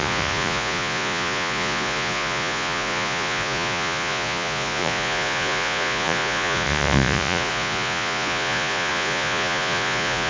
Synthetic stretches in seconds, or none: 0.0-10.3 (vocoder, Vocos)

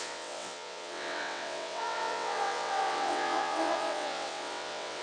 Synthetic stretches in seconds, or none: 0.0-5.0 (vocoder, WaveNeXt)

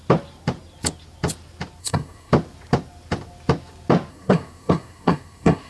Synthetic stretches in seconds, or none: 1.8-2.3 (codec, SNAC); 4.1-5.7

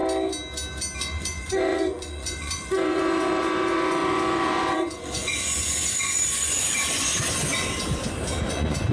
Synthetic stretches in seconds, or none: 1.0-7.1 (vocoder, Vocos); 8.5-8.9

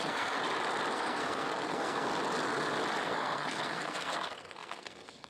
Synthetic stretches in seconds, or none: 0.0-0.4 (codec, SNAC); 0.9-2.1; 3.0-5.3

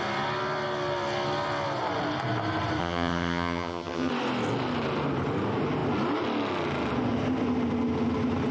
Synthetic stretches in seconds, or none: 2.8-4.1 (vocoder, HiFi-GAN)

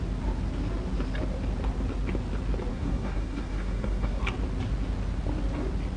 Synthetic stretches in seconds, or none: 2.7-4.2 (codec, SNAC)

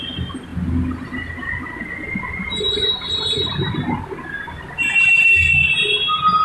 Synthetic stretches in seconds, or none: none